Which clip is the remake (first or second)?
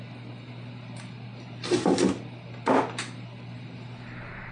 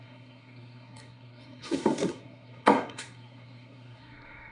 second